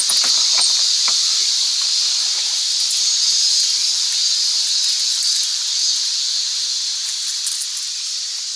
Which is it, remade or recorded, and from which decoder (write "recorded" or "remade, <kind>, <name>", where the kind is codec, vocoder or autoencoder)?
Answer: recorded